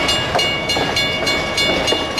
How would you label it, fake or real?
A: real